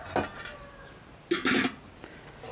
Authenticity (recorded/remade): recorded